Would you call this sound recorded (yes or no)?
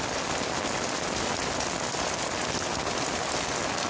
yes